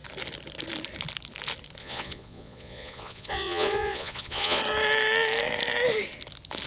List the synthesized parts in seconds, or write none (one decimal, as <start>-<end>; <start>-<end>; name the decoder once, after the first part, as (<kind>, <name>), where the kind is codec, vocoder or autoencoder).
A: 1.8-4.6 (vocoder, Vocos)